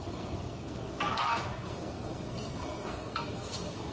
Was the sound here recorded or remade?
remade